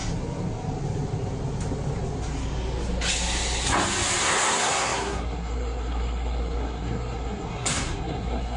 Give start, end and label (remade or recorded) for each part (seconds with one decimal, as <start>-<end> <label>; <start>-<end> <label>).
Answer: 0.0-4.2 recorded; 4.2-8.6 remade